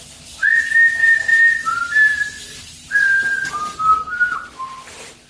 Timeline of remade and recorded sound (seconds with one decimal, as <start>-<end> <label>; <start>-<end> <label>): 0.0-5.3 recorded